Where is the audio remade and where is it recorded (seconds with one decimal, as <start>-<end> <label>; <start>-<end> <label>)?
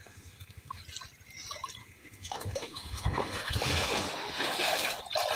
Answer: 0.0-0.8 remade; 0.8-1.8 recorded; 1.8-5.0 remade; 5.0-5.4 recorded